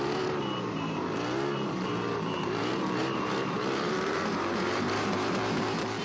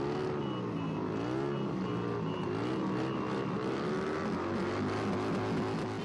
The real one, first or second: second